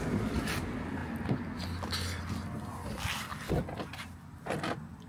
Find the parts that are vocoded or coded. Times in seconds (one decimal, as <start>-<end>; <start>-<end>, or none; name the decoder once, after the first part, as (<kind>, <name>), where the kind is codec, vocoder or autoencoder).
none